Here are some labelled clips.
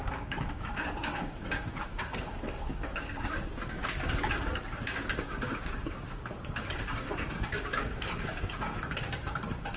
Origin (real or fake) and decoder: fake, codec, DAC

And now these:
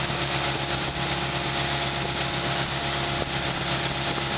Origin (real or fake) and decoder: real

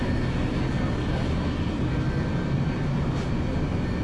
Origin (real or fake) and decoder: real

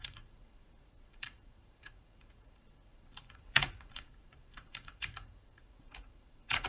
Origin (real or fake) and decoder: fake, vocoder, Vocos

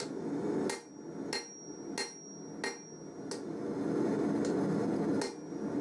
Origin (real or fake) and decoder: real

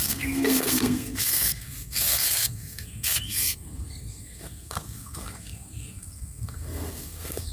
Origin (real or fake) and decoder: fake, codec, SNAC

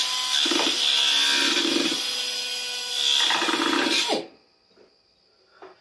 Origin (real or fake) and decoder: real